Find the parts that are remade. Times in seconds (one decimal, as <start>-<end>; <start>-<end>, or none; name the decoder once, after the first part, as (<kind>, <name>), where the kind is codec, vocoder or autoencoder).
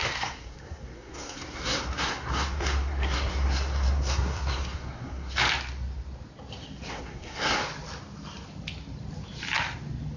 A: 0.0-5.4 (codec, SNAC); 6.9-7.6